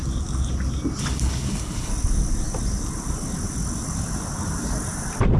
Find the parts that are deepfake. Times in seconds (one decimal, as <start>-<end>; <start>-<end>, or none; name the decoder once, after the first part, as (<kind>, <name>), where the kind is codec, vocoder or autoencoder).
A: 1.0-1.9 (codec, HILCodec)